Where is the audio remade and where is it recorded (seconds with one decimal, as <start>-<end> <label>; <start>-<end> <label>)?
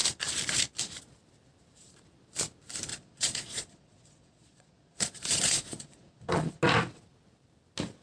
0.0-2.9 recorded; 2.9-6.6 remade; 6.6-8.0 recorded